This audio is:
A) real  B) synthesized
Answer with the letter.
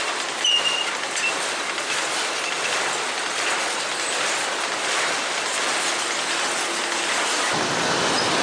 A